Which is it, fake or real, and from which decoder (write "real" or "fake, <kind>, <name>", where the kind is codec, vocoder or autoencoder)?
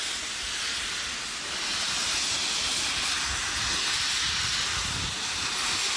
real